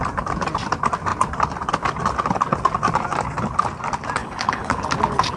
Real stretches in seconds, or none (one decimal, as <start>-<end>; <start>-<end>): 0.0-4.2; 4.8-5.4